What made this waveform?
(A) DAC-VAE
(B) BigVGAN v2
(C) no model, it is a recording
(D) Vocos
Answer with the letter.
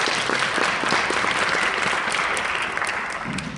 C